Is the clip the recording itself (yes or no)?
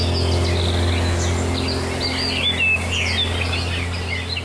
yes